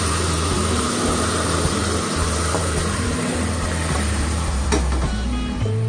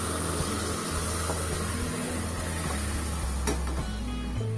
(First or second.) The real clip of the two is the second